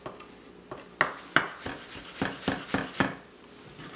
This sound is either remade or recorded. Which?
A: recorded